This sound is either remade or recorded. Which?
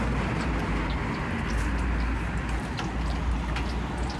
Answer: recorded